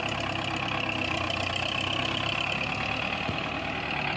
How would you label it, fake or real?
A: real